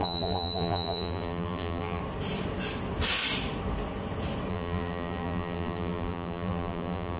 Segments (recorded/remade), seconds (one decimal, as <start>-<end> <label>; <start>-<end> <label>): 0.0-2.0 remade; 2.0-4.5 recorded; 4.5-7.2 remade